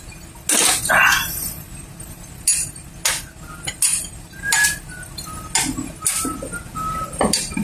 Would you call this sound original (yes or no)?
yes